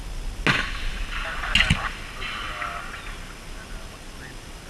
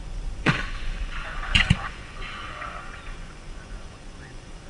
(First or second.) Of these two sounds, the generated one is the second